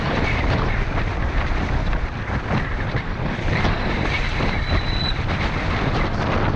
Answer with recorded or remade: recorded